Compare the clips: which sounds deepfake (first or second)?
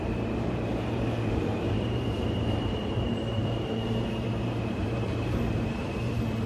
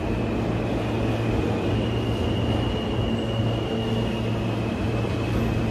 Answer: first